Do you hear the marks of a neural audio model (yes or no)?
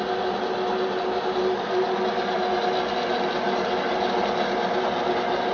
no